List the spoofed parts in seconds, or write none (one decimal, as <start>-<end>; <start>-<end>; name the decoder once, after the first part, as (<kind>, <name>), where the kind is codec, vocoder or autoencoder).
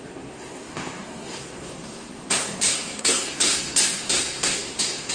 0.0-5.1 (codec, SNAC)